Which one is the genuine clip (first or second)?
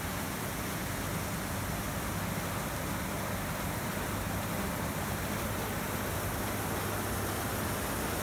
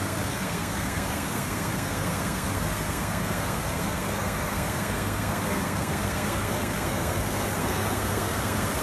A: first